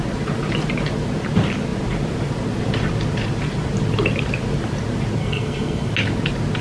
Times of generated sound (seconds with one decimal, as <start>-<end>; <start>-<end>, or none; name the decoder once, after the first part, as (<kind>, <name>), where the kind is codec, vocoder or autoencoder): 5.2-5.9 (codec, SNAC)